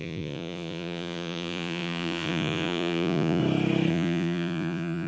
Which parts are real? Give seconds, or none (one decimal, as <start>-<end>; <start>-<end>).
3.4-3.9